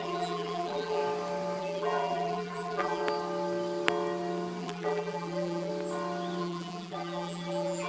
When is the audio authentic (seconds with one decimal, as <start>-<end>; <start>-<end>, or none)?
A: 1.0-1.6; 3.0-4.6; 5.7-6.4